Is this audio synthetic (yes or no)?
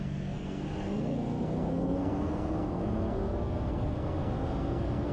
yes